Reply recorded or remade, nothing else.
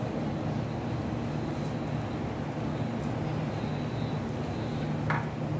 recorded